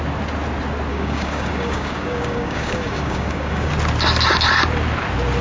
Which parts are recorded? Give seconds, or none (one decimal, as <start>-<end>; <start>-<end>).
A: 0.0-0.9; 3.7-5.4